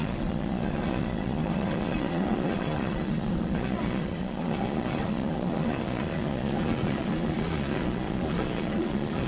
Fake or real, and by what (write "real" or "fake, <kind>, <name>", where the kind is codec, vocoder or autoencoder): fake, vocoder, Vocos